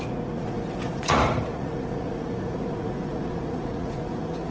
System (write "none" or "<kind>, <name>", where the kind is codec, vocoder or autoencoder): vocoder, Vocos